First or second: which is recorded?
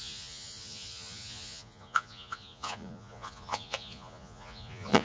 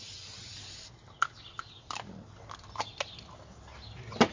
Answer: second